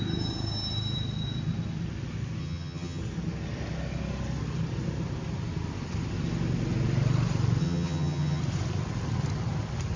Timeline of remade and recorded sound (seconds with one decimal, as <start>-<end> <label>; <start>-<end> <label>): 0.0-2.4 recorded; 2.4-3.0 remade; 3.0-7.6 recorded; 7.6-8.4 remade; 8.4-10.0 recorded

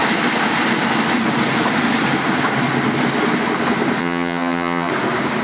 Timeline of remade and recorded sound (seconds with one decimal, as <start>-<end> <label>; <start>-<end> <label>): 0.0-4.0 recorded; 4.0-4.9 remade; 4.9-5.4 recorded